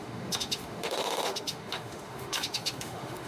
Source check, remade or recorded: remade